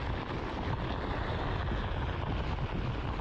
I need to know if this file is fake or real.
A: real